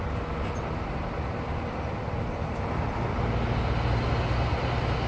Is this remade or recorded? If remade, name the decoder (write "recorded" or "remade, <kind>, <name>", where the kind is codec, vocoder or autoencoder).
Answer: recorded